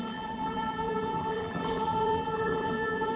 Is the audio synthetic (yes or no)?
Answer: yes